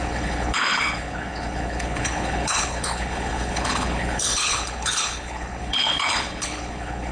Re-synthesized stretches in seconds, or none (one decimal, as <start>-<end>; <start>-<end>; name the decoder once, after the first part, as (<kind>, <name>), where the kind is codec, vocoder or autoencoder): 0.0-7.1 (codec, HILCodec)

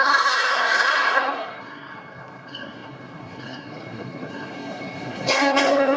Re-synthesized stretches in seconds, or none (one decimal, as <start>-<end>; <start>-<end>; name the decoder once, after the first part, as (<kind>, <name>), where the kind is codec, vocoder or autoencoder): 0.0-6.0 (codec, SNAC)

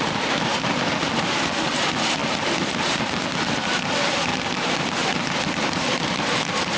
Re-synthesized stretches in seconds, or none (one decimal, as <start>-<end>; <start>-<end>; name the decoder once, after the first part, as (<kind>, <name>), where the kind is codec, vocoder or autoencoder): 0.0-2.2 (vocoder, BigVGAN v2); 2.8-4.3; 5.4-6.8

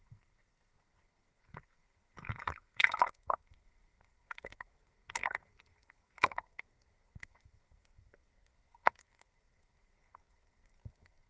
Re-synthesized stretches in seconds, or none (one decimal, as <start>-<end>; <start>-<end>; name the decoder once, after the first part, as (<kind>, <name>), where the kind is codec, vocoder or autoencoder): 0.0-11.3 (codec, SNAC)